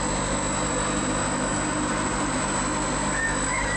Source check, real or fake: real